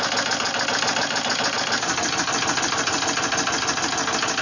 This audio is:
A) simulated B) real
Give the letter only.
B